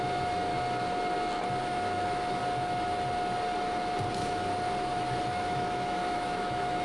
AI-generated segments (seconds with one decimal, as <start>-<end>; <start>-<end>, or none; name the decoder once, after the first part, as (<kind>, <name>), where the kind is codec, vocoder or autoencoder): 0.0-0.5 (autoencoder, DAC-VAE); 1.6-2.4; 4.1-4.5; 5.3-6.8